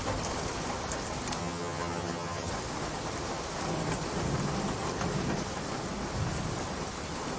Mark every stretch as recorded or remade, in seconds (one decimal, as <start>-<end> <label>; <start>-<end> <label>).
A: 0.0-1.4 recorded; 1.4-2.5 remade; 2.5-7.4 recorded

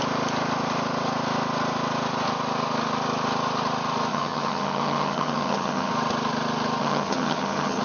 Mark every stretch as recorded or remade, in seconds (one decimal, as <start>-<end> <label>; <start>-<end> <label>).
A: 0.0-4.1 recorded; 4.1-5.9 remade; 5.9-6.8 recorded; 6.8-7.8 remade